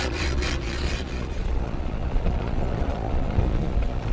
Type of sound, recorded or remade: remade